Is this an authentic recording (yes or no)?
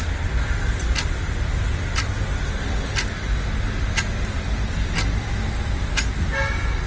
yes